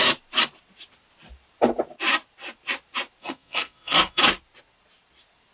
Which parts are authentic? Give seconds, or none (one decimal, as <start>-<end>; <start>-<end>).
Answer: 0.0-3.2; 4.2-5.5